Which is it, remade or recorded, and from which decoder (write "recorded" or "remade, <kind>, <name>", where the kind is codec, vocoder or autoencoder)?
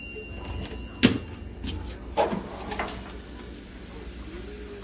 recorded